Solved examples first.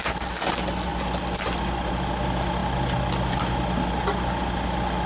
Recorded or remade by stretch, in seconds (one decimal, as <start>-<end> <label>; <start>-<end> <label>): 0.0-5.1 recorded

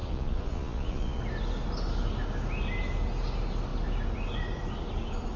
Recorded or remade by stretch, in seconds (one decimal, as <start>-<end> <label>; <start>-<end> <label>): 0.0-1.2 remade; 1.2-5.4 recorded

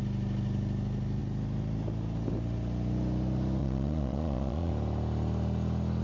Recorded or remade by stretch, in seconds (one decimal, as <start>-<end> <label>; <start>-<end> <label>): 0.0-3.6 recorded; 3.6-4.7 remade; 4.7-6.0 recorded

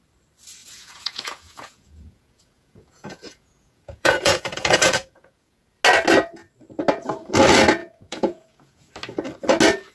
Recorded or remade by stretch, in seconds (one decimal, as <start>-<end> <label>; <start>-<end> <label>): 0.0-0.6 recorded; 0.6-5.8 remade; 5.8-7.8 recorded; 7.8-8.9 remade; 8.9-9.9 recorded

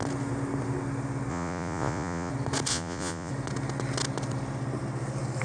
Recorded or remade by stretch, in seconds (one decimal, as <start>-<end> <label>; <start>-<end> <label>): 0.0-1.3 recorded; 1.3-2.3 remade; 2.3-2.7 recorded; 2.7-3.3 remade; 3.3-5.4 recorded

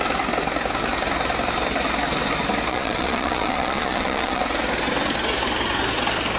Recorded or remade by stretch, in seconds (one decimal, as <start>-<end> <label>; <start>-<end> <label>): 0.0-2.7 recorded; 2.7-4.4 remade; 4.4-6.4 recorded

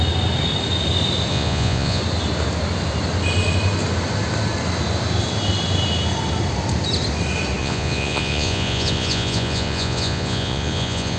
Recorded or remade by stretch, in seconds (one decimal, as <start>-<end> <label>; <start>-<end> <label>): 0.0-1.3 recorded; 1.3-2.0 remade; 2.0-7.6 recorded; 7.6-11.2 remade